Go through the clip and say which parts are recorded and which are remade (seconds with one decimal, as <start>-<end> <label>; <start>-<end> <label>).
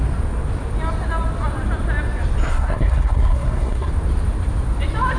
0.0-2.5 recorded; 2.5-3.9 remade; 3.9-5.2 recorded